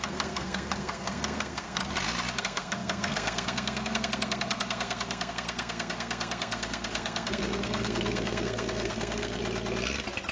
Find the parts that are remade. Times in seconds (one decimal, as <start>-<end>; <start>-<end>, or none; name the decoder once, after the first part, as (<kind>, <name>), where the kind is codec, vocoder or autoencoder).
0.0-1.8 (codec, SNAC); 2.4-9.4